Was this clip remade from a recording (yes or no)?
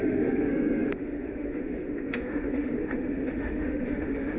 yes